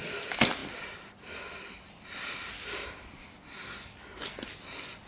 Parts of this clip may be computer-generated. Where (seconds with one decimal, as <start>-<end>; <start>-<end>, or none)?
none